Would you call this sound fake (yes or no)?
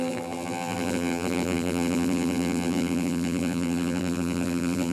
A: yes